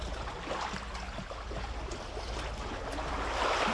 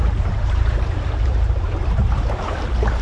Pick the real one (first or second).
first